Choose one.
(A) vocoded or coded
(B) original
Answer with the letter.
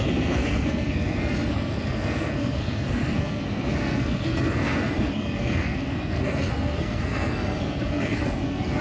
A